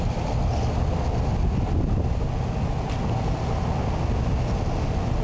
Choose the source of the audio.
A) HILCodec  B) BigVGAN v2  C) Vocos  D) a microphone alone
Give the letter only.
D